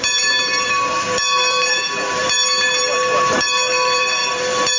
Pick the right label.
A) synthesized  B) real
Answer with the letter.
A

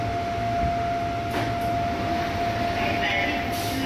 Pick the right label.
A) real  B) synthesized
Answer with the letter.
A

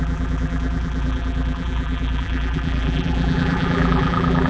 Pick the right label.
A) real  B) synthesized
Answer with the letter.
B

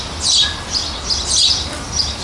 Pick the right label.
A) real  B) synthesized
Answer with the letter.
A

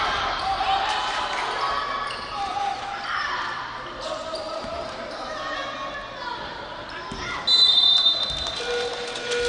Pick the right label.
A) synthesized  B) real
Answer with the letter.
B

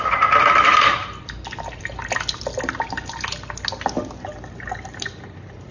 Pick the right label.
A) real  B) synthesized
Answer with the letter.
A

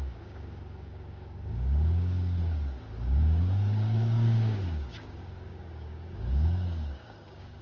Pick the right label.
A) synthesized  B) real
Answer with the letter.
A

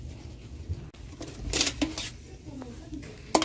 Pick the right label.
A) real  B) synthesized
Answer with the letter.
A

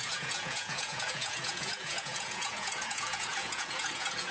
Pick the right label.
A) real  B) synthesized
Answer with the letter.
B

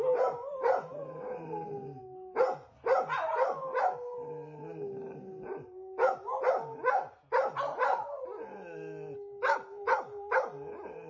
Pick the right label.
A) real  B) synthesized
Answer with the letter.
A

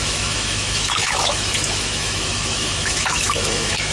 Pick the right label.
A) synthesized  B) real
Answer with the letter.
A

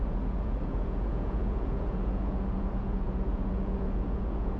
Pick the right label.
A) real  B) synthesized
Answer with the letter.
B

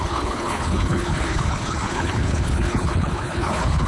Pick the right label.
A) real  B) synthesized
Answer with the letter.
B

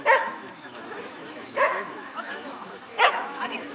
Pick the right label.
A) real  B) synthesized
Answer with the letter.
B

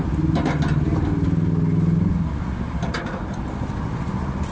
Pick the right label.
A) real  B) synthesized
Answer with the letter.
A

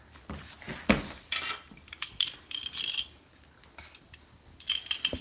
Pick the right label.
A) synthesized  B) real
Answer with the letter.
B